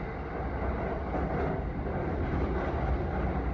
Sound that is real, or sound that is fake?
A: real